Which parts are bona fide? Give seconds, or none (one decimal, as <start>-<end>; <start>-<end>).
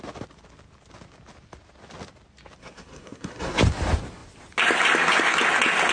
0.0-2.6; 3.6-5.9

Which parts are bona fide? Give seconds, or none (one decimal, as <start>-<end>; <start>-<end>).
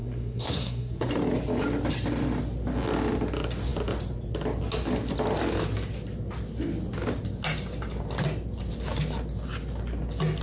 1.1-10.4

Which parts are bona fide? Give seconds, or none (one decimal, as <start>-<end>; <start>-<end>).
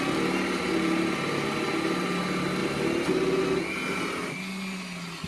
0.0-5.3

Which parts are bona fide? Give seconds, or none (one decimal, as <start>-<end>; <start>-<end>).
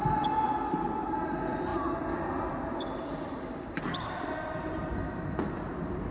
0.0-6.1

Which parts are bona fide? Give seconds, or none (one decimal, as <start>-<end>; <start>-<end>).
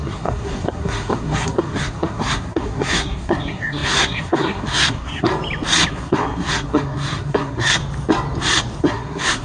5.3-5.9; 7.8-8.8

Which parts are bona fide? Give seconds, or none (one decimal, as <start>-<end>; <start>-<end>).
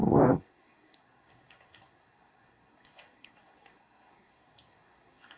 none